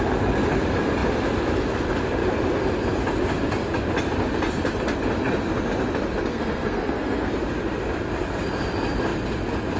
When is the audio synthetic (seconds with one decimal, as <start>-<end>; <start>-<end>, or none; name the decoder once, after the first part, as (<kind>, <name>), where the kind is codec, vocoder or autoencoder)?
6.3-7.3 (codec, SNAC)